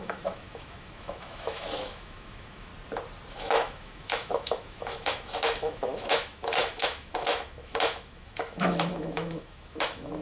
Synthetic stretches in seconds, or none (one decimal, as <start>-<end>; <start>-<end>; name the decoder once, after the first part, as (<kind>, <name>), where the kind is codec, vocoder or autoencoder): 0.0-2.7 (autoencoder, DAC-VAE); 3.3-10.2